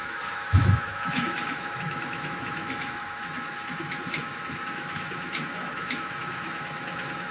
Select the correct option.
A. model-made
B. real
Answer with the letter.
A